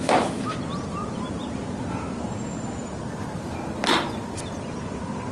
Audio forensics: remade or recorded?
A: recorded